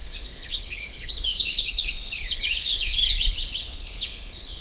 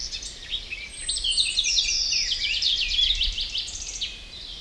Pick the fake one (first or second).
first